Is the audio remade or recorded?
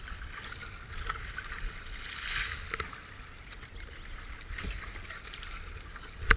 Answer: recorded